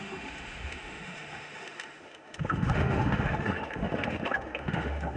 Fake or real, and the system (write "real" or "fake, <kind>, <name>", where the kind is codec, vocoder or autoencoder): fake, autoencoder, DAC-VAE